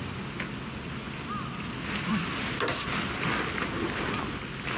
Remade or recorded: recorded